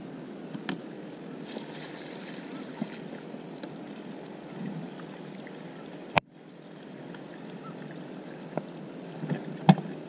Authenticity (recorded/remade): recorded